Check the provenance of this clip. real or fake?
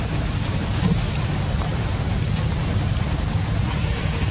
real